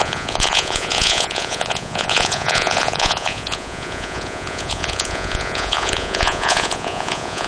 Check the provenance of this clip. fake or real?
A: fake